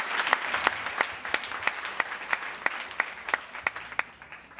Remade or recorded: recorded